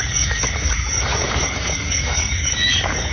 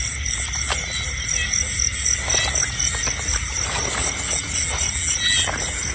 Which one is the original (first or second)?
second